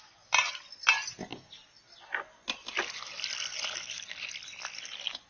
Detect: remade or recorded recorded